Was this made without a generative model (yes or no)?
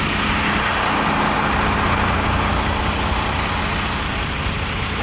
yes